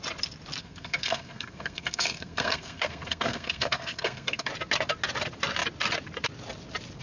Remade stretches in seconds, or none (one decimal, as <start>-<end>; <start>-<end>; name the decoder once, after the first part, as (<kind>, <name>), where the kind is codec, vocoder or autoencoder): 0.6-4.5 (codec, SNAC)

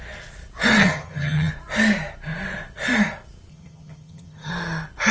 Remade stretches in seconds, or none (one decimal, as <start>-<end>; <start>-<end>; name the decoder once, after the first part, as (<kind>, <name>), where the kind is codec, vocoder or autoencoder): 0.8-1.5 (vocoder, HiFi-GAN); 3.5-4.5